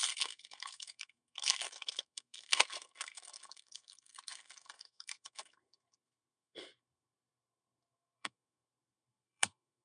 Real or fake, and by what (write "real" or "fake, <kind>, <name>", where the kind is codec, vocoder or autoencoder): fake, codec, SNAC